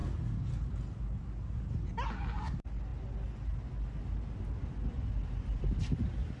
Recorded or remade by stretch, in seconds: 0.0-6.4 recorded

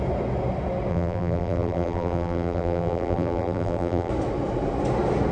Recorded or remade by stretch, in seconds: 0.0-0.9 recorded; 0.9-4.1 remade; 4.1-5.3 recorded